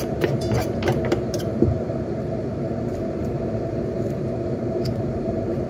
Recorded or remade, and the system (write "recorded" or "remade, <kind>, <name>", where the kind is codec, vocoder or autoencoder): remade, vocoder, BigVGAN v2